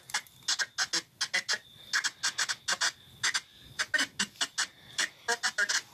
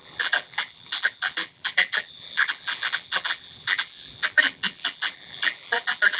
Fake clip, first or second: second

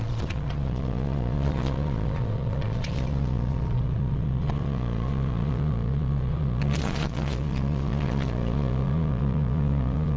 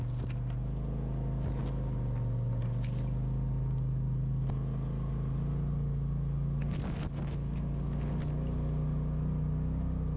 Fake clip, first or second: first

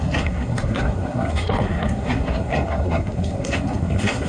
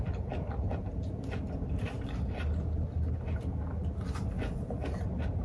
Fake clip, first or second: first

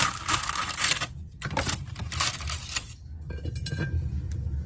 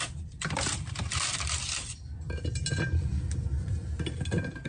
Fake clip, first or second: second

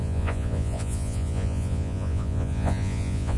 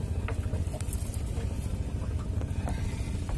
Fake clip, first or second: first